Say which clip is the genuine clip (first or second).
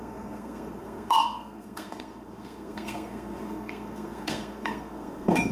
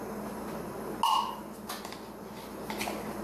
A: second